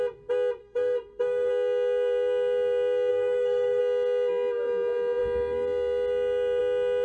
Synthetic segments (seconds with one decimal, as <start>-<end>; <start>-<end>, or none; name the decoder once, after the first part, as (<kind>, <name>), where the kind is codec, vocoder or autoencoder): 0.6-1.5 (codec, SNAC); 3.1-3.8